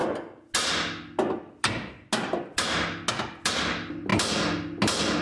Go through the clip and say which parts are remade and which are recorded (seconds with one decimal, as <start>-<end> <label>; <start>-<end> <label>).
0.0-5.2 recorded